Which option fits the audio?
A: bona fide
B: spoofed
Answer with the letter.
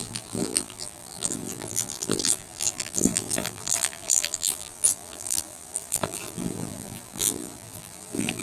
B